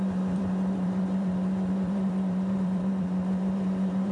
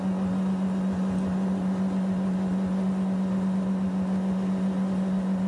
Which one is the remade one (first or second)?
first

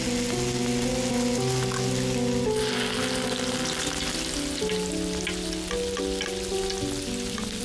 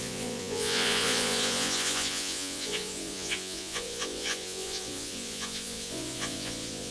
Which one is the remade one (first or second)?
second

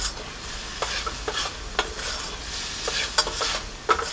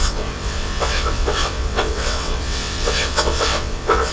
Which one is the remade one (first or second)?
second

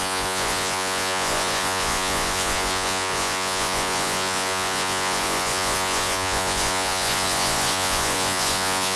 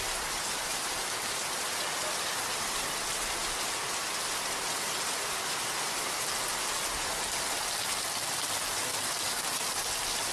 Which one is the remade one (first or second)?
first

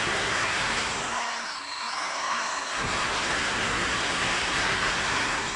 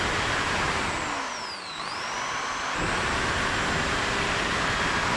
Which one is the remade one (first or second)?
first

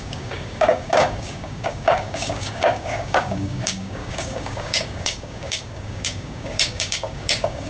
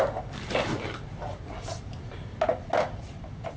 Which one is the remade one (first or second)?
first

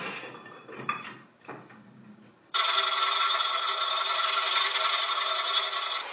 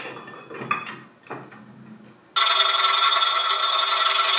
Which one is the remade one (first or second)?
first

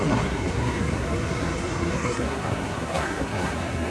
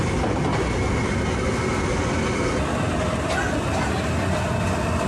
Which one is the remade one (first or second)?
first